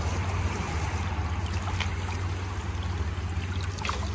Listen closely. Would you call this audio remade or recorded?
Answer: recorded